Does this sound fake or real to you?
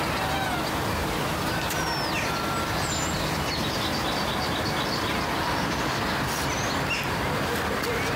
real